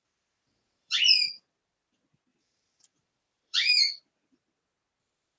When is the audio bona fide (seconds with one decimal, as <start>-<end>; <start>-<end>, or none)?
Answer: 1.0-2.3; 3.8-5.4